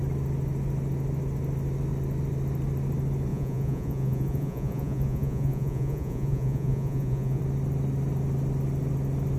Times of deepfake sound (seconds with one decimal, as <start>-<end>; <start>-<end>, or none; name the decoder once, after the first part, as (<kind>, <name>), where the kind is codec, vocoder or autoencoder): 3.3-7.4 (vocoder, Vocos)